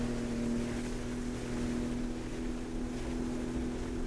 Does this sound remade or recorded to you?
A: recorded